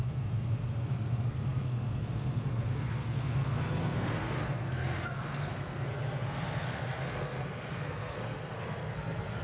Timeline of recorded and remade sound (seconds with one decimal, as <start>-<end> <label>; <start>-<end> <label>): 0.0-9.4 remade

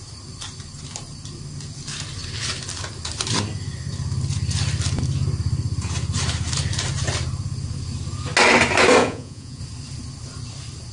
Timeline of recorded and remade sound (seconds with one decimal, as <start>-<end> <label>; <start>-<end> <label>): 0.0-9.0 recorded; 9.0-9.6 remade; 9.6-10.9 recorded

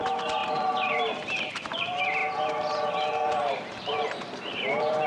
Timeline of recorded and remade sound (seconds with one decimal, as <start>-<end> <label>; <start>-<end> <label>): 0.0-2.2 remade; 2.2-3.5 recorded; 3.5-5.1 remade

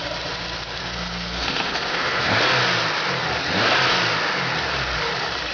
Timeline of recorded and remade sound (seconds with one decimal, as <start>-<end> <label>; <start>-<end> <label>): 0.0-0.8 recorded; 0.8-2.4 remade; 2.4-5.5 recorded

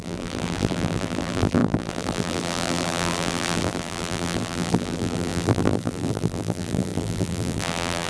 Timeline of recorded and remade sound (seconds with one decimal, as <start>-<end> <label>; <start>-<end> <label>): 0.0-8.1 remade

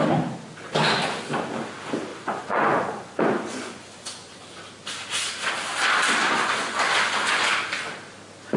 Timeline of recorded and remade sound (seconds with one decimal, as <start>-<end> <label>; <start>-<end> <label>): 0.0-2.1 recorded; 2.1-4.4 remade; 4.4-6.2 recorded; 6.2-7.5 remade; 7.5-8.6 recorded

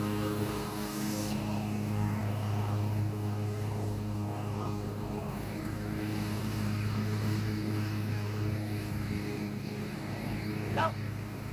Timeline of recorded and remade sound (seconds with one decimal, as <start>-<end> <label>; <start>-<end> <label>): 0.0-11.5 remade